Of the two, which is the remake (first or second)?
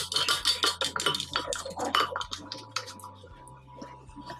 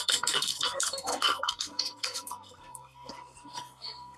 second